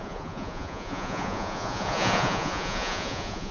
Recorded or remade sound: remade